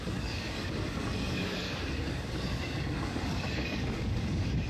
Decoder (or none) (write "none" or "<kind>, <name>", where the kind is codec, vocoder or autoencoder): codec, DAC